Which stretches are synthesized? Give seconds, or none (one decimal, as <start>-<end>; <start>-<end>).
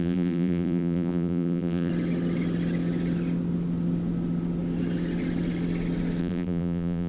0.0-1.9; 6.2-7.1